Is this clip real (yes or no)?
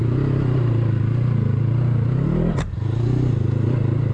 yes